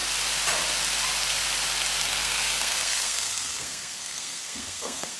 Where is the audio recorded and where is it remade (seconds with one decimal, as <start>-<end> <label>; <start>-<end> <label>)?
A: 0.0-2.0 recorded; 2.0-5.2 remade